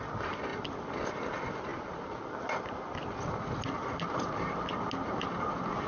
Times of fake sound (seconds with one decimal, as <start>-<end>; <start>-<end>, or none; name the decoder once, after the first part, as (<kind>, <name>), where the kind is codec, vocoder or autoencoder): none